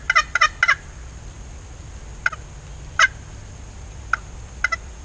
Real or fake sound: real